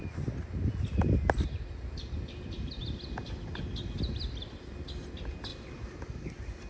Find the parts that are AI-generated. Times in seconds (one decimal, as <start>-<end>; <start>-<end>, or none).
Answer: 2.0-2.8; 5.5-6.3